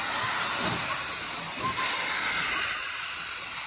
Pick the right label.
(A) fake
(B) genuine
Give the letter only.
B